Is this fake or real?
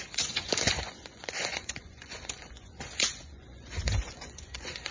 fake